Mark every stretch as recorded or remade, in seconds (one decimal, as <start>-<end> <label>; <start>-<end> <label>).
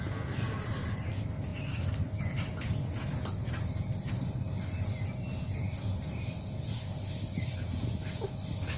0.0-8.8 recorded